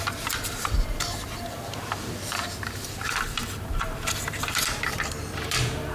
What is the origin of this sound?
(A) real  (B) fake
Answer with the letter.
B